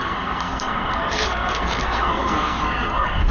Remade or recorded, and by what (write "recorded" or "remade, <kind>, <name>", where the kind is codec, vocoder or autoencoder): remade, codec, SNAC